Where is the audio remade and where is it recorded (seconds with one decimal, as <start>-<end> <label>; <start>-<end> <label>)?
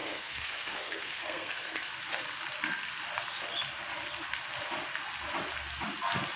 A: 0.0-1.9 remade; 1.9-6.4 recorded